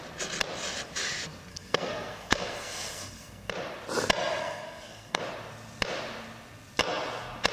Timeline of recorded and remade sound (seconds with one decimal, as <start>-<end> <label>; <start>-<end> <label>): 0.0-1.5 recorded; 1.5-3.5 remade; 3.5-4.4 recorded; 4.4-5.2 remade; 5.2-7.5 recorded